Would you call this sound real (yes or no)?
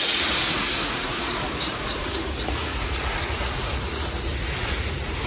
no